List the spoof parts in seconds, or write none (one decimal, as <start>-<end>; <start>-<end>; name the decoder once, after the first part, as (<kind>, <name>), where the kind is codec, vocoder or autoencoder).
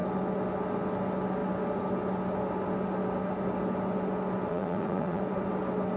4.5-5.2 (vocoder, Vocos)